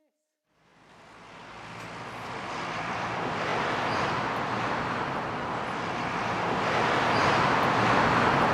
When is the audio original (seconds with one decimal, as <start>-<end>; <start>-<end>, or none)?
0.7-2.8